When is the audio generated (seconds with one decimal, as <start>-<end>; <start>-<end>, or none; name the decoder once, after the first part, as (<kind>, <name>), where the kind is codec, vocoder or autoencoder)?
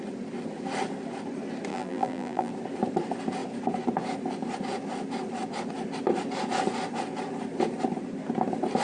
1.7-2.5 (vocoder, BigVGAN v2)